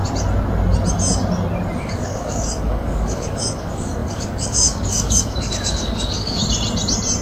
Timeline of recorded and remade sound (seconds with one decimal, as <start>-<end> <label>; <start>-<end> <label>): 0.0-1.8 recorded; 1.8-6.4 remade; 6.4-7.2 recorded